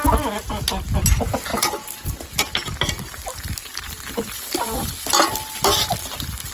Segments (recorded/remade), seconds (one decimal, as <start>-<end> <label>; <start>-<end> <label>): 0.0-6.5 recorded